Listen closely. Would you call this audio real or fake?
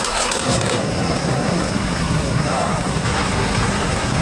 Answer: fake